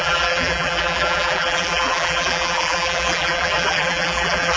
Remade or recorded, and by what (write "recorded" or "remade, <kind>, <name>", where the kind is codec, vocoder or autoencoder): remade, vocoder, BigVGAN v2